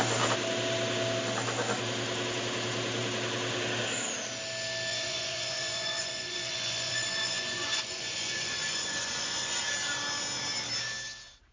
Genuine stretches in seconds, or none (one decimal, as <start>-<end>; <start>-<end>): 0.0-4.9; 9.6-11.5